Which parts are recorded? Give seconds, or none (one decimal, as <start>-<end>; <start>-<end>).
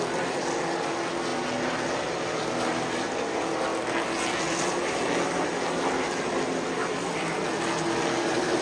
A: 0.0-8.6